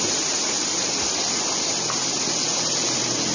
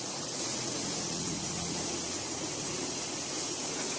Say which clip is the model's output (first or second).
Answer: second